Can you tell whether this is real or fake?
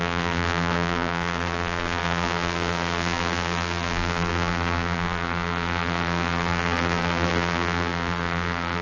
fake